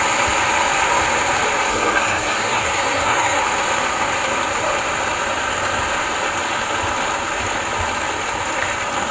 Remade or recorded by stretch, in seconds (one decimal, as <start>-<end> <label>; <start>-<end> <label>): 0.0-1.7 recorded; 1.7-3.4 remade; 3.4-9.1 recorded